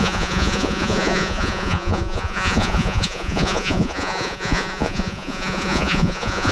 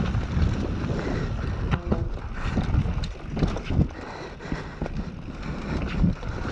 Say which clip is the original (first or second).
second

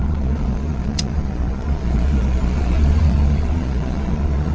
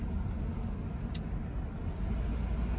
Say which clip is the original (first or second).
second